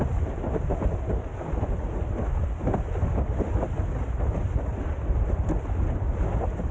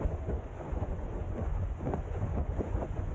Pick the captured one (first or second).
first